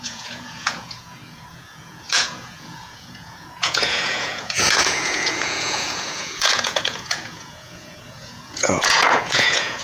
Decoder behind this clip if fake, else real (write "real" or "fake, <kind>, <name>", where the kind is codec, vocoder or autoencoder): fake, vocoder, Vocos